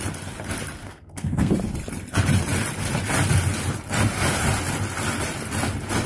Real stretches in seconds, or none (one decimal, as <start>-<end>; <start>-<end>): 0.0-0.8; 1.5-6.1